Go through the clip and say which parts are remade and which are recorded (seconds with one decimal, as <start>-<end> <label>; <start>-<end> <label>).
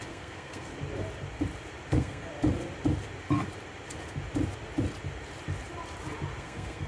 0.0-0.7 remade; 0.7-1.9 recorded; 1.9-2.3 remade; 2.3-6.4 recorded; 6.4-6.9 remade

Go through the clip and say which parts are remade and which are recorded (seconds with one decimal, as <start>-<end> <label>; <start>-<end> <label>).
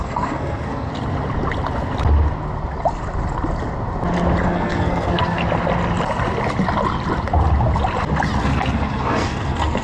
0.0-0.9 remade; 0.9-4.4 recorded; 4.4-5.4 remade; 5.4-8.4 recorded; 8.4-9.8 remade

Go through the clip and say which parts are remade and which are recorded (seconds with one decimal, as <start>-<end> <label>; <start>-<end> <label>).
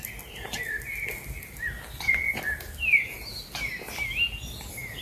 0.0-5.0 recorded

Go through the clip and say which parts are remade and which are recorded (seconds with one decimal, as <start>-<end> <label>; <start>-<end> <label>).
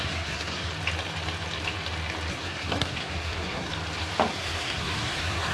0.0-0.7 remade; 0.7-2.3 recorded; 2.3-3.7 remade; 3.7-4.3 recorded; 4.3-5.5 remade